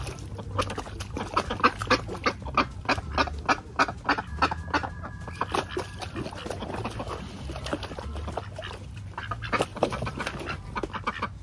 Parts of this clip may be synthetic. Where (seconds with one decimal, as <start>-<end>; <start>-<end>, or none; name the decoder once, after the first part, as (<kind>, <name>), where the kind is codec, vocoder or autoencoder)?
9.7-10.2 (vocoder, BigVGAN v2)